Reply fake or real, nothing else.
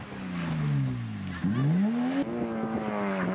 real